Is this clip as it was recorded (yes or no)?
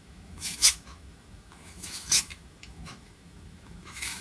no